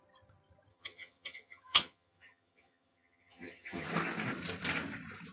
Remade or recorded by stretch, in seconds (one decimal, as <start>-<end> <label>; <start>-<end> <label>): 0.0-0.7 recorded; 0.7-3.9 remade; 3.9-5.3 recorded